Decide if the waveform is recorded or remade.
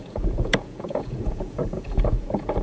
remade